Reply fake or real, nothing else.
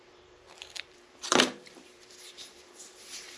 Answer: fake